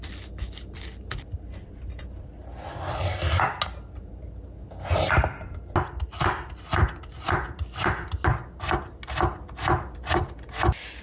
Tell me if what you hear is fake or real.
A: real